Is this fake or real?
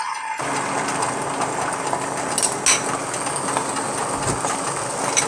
real